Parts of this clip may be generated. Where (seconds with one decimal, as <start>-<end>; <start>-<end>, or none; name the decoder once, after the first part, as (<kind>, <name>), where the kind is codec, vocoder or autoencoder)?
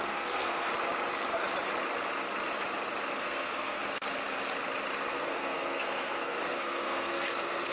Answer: 0.0-0.7 (codec, SNAC); 3.2-3.8; 5.1-7.7